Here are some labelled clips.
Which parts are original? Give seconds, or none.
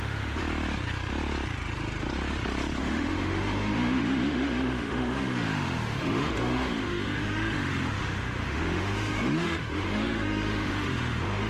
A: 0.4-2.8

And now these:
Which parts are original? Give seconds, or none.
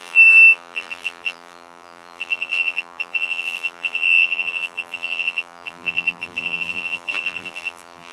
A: none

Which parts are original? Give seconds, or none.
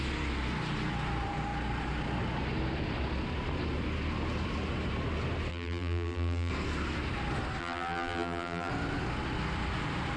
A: 0.0-5.5; 6.5-7.6; 8.7-10.2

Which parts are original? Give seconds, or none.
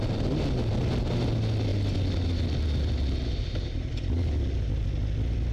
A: 0.0-5.5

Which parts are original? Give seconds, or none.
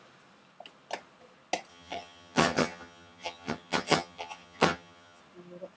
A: 0.0-1.7; 5.2-5.8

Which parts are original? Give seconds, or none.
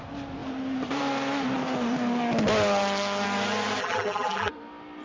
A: 0.0-3.8; 4.5-5.0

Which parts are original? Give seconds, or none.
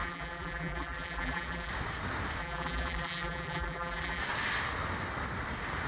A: 1.7-2.4; 4.2-5.9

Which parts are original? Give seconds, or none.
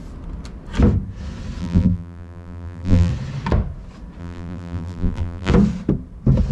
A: 0.0-1.6; 3.1-4.2; 5.5-6.5